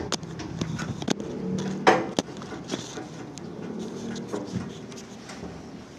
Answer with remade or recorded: recorded